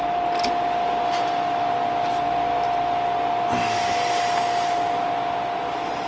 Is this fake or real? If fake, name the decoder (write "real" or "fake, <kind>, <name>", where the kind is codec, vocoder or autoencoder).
real